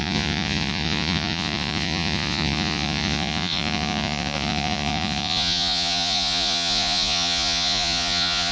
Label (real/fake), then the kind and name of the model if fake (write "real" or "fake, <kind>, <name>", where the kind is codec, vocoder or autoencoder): fake, vocoder, Vocos